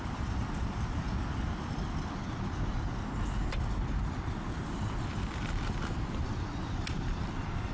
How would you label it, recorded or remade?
recorded